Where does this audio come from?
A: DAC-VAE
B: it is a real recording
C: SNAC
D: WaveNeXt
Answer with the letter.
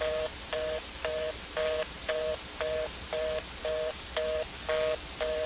B